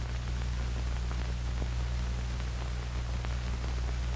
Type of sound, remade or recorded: recorded